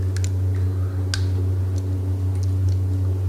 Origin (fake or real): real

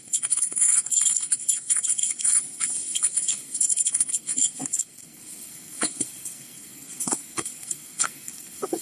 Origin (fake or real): fake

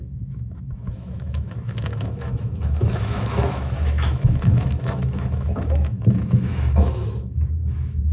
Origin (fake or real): fake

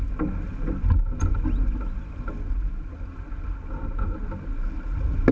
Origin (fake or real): real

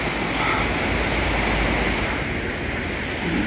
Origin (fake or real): real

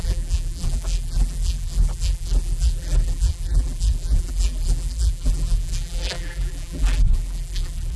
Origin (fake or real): fake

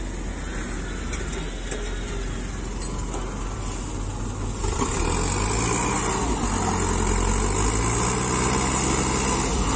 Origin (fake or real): real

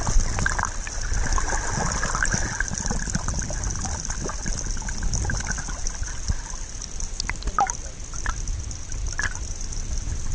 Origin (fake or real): real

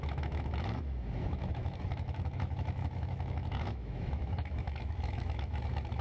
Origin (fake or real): fake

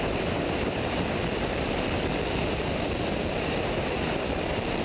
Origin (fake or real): fake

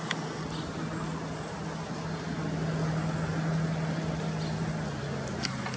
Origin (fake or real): real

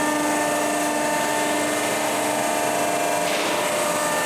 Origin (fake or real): real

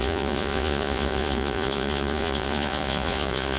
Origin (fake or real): fake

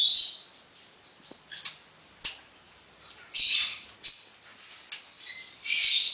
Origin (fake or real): real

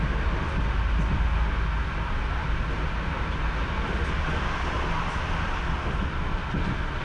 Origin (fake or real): real